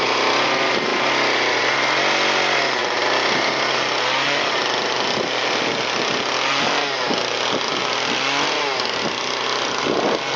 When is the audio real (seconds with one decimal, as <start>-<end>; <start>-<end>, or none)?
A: 0.0-10.4